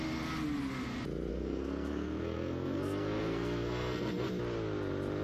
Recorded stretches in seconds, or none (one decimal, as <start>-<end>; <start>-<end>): 0.0-1.3; 4.3-5.2